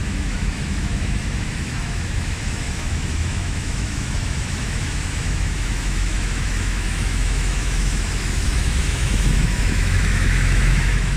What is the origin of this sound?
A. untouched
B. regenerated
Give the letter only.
B